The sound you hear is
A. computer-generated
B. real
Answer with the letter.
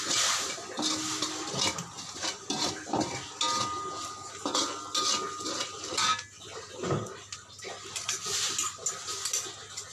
B